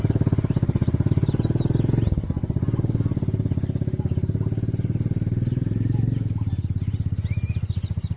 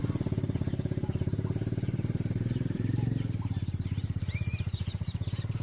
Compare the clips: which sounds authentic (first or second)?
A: first